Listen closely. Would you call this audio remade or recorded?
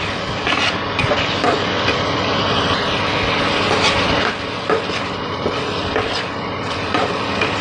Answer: recorded